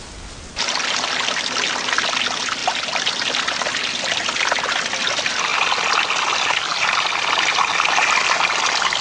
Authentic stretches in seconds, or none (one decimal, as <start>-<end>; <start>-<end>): 0.0-9.0